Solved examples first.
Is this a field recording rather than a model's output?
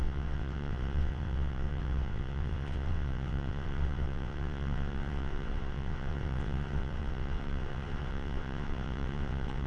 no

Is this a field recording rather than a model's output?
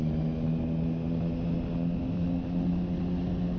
yes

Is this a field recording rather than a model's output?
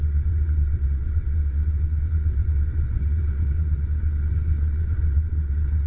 no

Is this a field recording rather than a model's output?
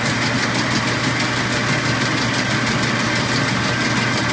yes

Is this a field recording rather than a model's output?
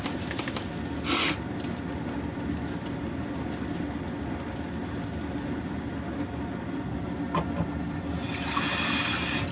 yes